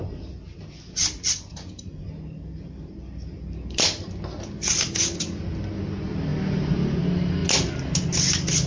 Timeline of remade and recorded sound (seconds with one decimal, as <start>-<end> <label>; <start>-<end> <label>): 0.0-8.7 recorded